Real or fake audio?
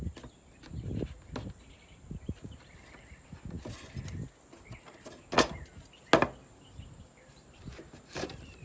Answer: real